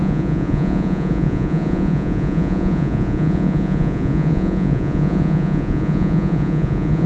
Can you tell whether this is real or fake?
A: fake